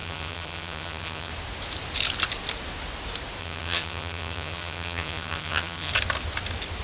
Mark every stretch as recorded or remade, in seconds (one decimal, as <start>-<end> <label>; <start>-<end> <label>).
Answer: 0.0-1.3 remade; 1.3-3.4 recorded; 3.4-5.9 remade; 5.9-6.8 recorded